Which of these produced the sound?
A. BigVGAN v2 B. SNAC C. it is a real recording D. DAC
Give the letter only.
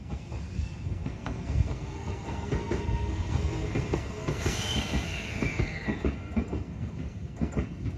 B